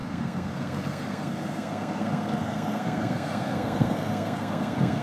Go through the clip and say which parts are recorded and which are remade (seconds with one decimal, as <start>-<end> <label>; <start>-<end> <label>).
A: 0.0-5.0 remade

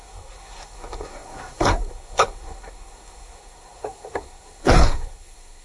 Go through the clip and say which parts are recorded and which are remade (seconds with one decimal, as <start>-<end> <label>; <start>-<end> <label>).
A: 0.0-5.6 remade

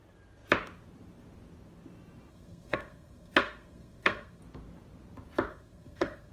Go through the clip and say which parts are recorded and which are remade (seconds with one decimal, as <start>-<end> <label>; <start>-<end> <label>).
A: 0.0-2.3 recorded; 2.3-4.4 remade; 4.4-5.5 recorded; 5.5-6.3 remade

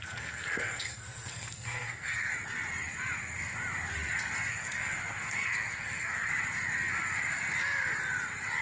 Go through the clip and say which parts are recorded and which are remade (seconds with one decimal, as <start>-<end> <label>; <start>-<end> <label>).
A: 0.0-2.3 remade; 2.3-4.5 recorded; 4.5-6.3 remade; 6.3-8.6 recorded

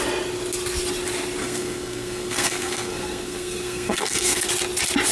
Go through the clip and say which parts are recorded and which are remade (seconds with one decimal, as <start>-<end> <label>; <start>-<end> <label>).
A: 0.0-1.4 recorded; 1.4-4.5 remade; 4.5-5.1 recorded

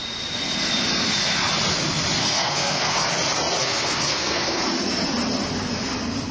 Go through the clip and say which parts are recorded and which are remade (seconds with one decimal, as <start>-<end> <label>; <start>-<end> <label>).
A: 0.0-2.2 recorded; 2.2-3.1 remade; 3.1-3.6 recorded; 3.6-4.6 remade; 4.6-6.3 recorded

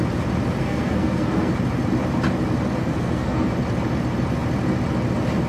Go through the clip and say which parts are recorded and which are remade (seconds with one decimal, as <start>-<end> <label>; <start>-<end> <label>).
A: 0.0-0.6 recorded; 0.6-1.5 remade; 1.5-2.8 recorded; 2.8-3.5 remade; 3.5-5.5 recorded

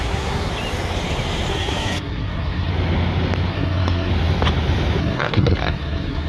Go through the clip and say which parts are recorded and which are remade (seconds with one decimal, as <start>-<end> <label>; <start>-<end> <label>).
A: 0.0-0.5 remade; 0.5-1.5 recorded; 1.5-2.7 remade; 2.7-3.5 recorded; 3.5-4.1 remade; 4.1-5.0 recorded; 5.0-6.3 remade